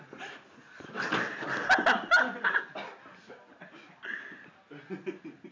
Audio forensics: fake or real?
real